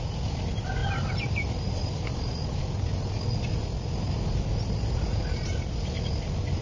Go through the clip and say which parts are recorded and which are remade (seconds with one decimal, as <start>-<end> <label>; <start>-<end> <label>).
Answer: 0.0-6.6 recorded